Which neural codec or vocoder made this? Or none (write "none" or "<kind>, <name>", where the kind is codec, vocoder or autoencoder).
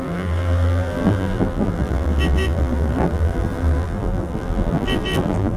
vocoder, BigVGAN v2